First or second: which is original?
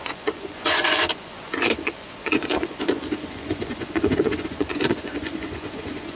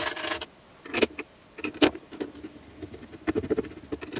second